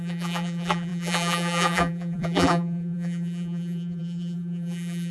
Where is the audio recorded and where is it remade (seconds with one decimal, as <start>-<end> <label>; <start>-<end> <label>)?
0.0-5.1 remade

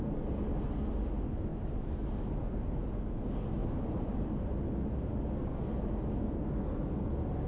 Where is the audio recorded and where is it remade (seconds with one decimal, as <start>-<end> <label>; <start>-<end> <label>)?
0.0-1.5 recorded; 1.5-2.9 remade; 2.9-3.6 recorded; 3.6-4.6 remade; 4.6-7.5 recorded

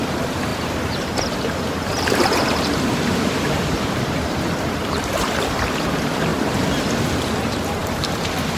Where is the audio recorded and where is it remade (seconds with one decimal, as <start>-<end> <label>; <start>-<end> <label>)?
0.0-6.3 remade; 6.3-7.8 recorded; 7.8-8.6 remade

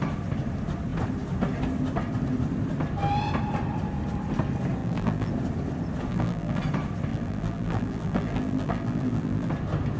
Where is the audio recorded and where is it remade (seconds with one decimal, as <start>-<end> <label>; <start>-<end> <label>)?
0.0-4.8 recorded; 4.8-5.3 remade; 5.3-6.1 recorded; 6.1-6.6 remade; 6.6-7.1 recorded; 7.1-9.5 remade; 9.5-10.0 recorded

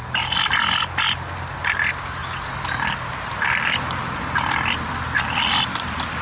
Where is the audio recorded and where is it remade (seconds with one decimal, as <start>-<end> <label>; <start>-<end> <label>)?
0.0-6.2 recorded